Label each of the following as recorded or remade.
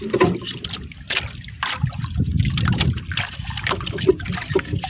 recorded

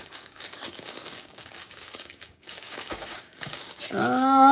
remade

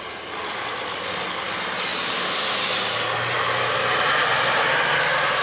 recorded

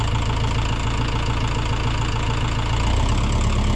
recorded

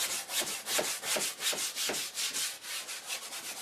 recorded